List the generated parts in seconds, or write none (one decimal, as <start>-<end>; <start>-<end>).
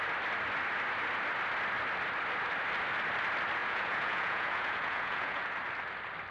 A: 3.6-5.4